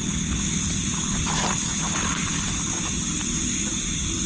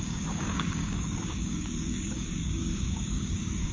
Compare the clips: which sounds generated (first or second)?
second